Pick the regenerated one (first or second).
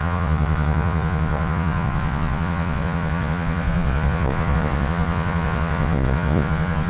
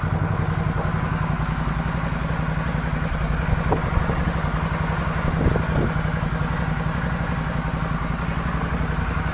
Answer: first